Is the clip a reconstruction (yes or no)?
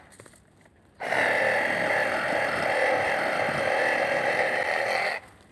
no